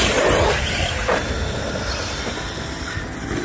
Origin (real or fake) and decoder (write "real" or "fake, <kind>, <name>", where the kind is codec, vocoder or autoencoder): real